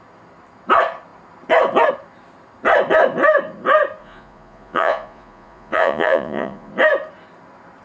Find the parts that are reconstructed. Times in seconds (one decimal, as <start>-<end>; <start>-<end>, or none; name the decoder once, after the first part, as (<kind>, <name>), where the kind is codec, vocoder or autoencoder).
4.0-6.7 (vocoder, Vocos)